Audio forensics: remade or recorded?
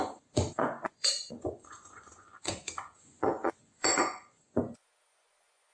remade